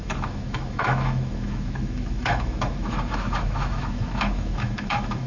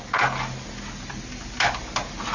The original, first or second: second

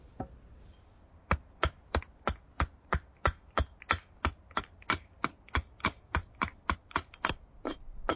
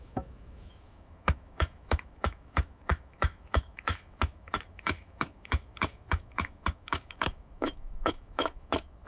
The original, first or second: first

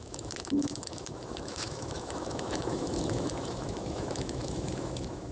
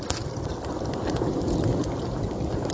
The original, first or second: second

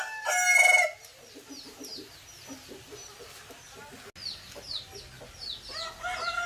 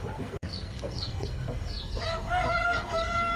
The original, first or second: first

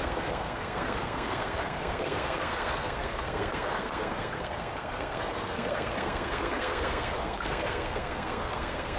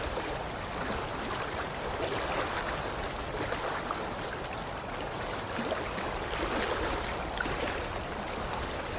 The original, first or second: second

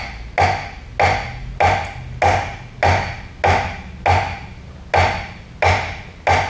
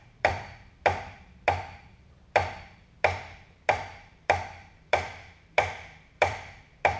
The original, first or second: first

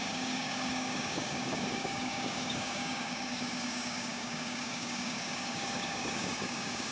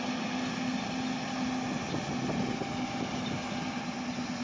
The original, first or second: second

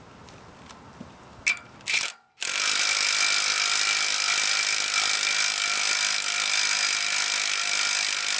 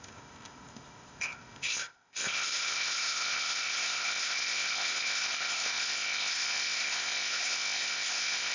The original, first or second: first